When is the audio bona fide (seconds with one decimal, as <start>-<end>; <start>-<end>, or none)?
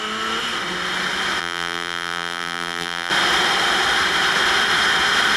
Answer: 0.0-1.4; 3.1-5.4